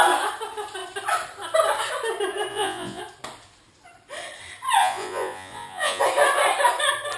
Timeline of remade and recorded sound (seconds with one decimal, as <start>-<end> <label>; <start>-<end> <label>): 0.0-2.5 recorded; 2.5-3.0 remade; 3.0-4.8 recorded; 4.8-6.0 remade; 6.0-7.2 recorded